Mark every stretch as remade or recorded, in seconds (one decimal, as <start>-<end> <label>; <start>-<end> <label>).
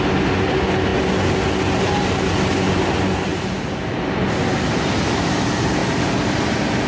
0.0-6.9 recorded